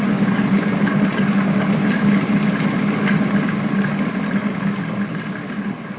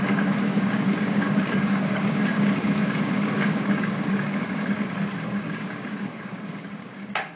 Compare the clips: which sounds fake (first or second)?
second